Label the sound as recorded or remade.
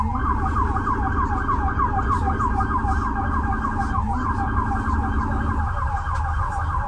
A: recorded